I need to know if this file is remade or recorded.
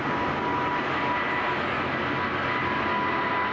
recorded